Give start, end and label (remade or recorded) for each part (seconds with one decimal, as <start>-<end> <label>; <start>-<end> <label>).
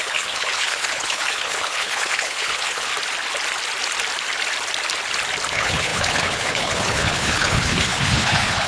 0.0-2.9 remade; 2.9-5.5 recorded; 5.5-8.7 remade